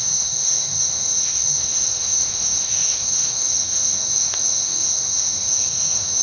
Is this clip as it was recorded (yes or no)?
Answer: no